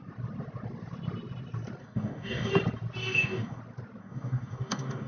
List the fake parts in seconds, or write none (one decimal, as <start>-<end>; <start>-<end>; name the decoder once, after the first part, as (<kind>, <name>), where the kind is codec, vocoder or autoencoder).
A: 1.8-2.5 (codec, DAC); 3.0-3.6; 4.0-5.1

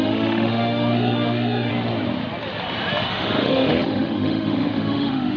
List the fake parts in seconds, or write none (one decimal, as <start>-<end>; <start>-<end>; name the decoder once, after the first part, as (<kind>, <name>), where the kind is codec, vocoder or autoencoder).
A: 0.0-1.7 (autoencoder, DAC-VAE); 3.1-5.4

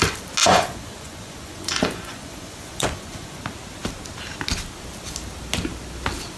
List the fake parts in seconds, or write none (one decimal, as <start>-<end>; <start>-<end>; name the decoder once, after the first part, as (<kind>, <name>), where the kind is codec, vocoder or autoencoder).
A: 0.4-3.4 (vocoder, Vocos)

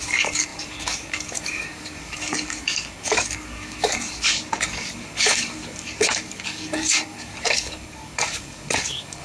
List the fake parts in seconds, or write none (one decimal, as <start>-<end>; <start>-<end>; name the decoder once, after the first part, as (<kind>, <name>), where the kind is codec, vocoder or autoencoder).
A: 0.0-9.2 (codec, DAC)

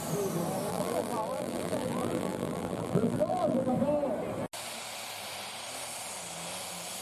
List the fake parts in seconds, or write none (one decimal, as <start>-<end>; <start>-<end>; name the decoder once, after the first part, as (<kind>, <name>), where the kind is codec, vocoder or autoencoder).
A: 0.7-3.7 (vocoder, BigVGAN v2)

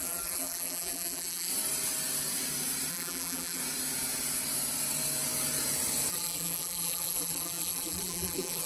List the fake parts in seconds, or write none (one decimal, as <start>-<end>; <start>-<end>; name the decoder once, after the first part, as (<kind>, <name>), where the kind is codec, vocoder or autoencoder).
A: 0.0-1.5 (vocoder, BigVGAN v2); 2.9-3.6; 6.1-8.7